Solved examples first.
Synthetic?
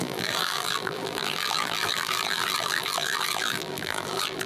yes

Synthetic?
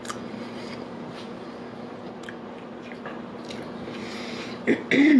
no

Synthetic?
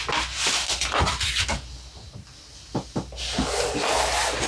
no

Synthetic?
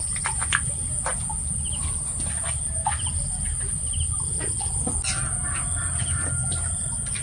no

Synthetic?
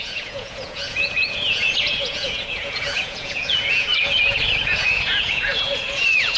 yes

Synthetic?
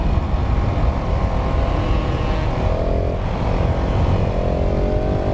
no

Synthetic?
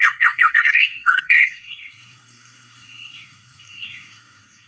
yes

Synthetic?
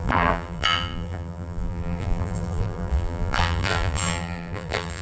yes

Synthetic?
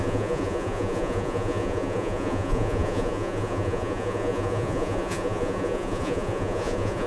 yes